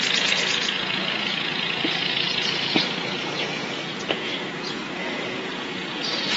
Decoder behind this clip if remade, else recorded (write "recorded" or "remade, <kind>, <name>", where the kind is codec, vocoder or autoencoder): remade, vocoder, Vocos